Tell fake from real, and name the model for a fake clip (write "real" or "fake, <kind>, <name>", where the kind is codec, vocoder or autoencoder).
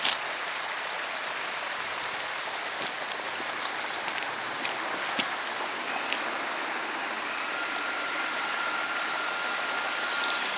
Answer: real